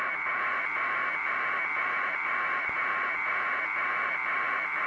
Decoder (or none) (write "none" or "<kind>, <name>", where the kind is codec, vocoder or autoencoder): vocoder, Vocos